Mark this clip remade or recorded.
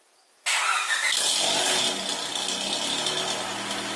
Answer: recorded